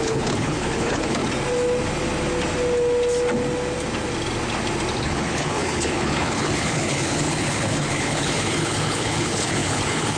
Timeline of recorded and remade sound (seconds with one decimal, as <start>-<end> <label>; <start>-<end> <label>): 0.0-1.2 remade; 1.2-4.9 recorded; 4.9-10.2 remade